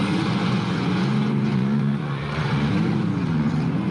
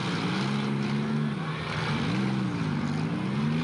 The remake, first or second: first